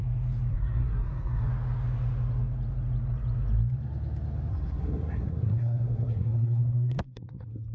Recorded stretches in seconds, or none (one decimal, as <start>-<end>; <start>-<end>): 0.0-0.5; 1.5-4.5